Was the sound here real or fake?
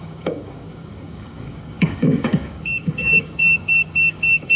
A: fake